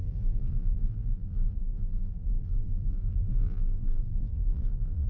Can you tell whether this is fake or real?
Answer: fake